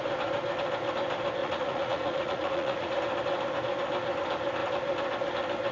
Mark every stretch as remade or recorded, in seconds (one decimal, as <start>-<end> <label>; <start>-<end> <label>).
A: 0.0-1.4 recorded; 1.4-3.0 remade; 3.0-5.7 recorded